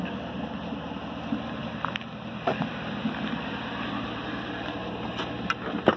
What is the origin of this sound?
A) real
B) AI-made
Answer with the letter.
A